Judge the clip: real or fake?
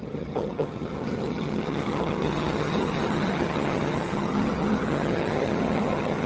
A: fake